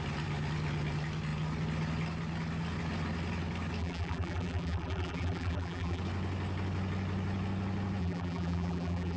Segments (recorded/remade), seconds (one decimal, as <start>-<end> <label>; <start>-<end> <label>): 0.0-3.8 recorded; 3.8-6.0 remade; 6.0-8.0 recorded; 8.0-9.2 remade